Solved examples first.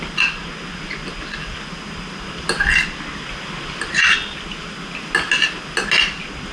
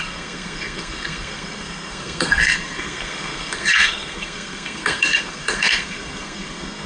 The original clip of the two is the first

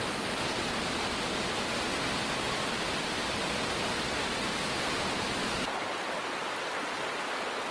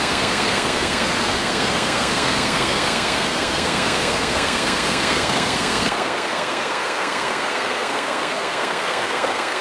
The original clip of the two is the first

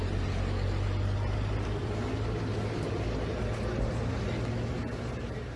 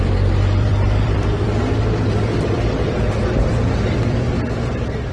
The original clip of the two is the first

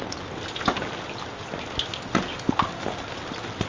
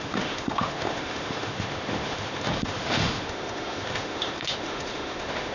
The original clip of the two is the first